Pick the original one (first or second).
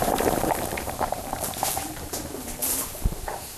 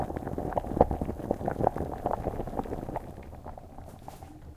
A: second